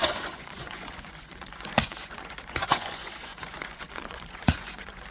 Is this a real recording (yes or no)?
no